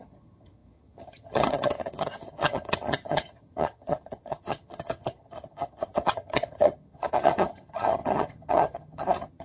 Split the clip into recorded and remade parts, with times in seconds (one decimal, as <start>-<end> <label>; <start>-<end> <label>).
0.0-9.4 remade